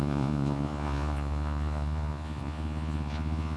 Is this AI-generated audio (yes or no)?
yes